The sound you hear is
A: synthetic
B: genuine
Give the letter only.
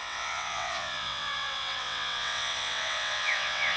A